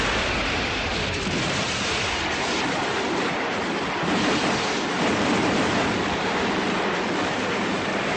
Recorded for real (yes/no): no